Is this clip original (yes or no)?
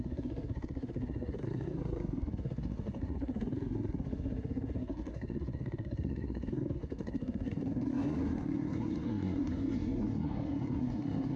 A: no